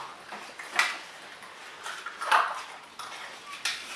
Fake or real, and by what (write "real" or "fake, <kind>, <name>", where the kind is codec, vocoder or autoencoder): real